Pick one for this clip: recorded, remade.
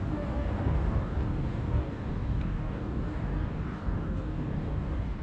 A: remade